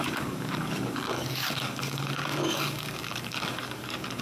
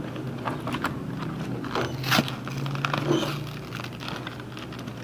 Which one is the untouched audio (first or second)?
second